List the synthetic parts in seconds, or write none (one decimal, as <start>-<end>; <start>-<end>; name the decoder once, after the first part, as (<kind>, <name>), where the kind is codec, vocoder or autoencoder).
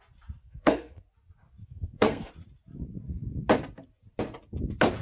0.4-1.0 (codec, SNAC); 1.6-2.3